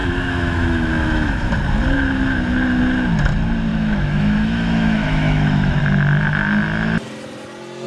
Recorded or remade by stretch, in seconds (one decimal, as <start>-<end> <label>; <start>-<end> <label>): 0.0-1.5 remade; 1.5-3.7 recorded; 3.7-5.8 remade; 5.8-7.9 recorded